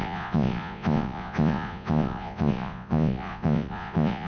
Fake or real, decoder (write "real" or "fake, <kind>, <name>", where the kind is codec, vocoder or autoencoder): fake, vocoder, Vocos